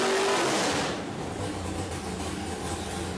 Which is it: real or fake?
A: real